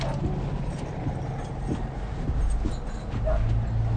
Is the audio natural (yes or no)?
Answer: yes